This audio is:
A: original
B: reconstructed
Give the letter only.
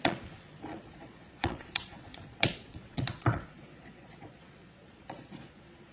B